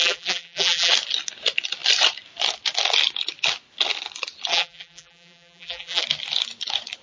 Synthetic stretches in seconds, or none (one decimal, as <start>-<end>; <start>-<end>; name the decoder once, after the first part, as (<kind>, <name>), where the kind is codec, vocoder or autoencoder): 0.0-0.9 (vocoder, BigVGAN v2); 4.5-6.0